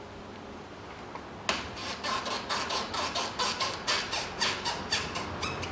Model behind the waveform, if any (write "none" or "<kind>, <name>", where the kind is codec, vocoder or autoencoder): none